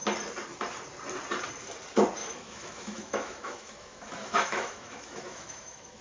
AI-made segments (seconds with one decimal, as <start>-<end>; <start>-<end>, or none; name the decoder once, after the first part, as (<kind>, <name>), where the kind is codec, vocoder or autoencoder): 2.2-6.0 (autoencoder, DAC-VAE)